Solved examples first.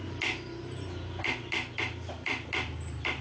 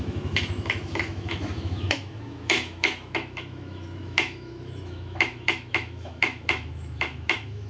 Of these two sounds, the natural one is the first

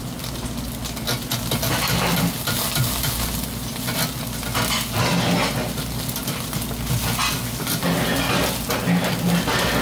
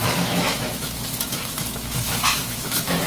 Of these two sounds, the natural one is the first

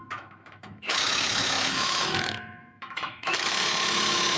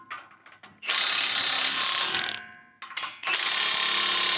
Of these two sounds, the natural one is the second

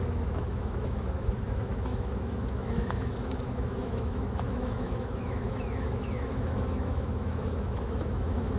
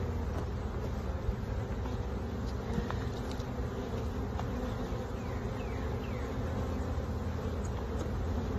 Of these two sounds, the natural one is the second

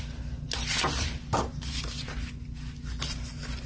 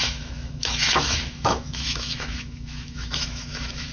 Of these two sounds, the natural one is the first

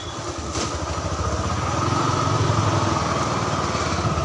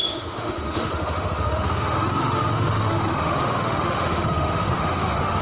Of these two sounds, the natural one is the first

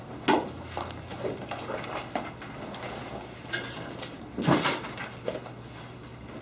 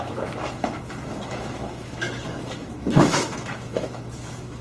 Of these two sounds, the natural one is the first